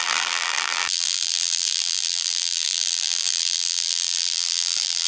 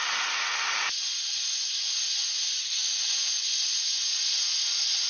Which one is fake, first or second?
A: first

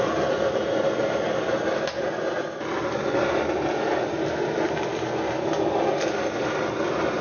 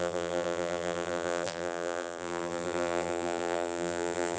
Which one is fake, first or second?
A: second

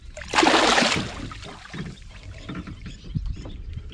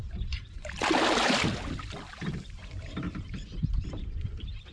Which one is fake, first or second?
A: second